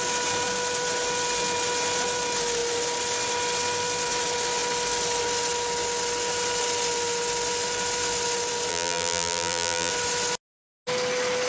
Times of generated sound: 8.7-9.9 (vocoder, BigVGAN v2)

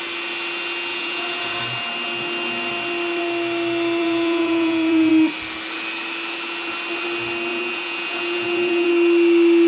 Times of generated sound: 0.9-1.6 (vocoder, Vocos); 4.0-5.1; 7.5-8.9

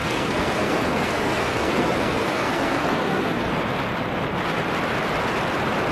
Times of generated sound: 0.0-3.5 (codec, SNAC)

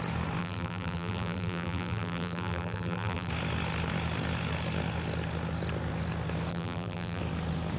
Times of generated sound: 0.4-3.3 (vocoder, BigVGAN v2); 6.5-7.2